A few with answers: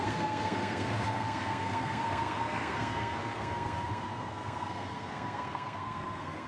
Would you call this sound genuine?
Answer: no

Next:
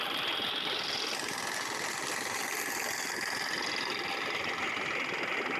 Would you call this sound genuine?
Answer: yes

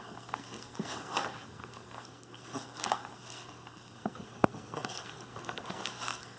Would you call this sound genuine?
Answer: no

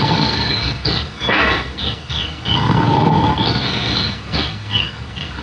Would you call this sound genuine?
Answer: no